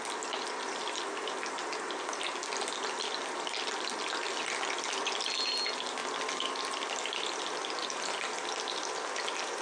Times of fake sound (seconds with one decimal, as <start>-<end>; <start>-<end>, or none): 6.0-7.1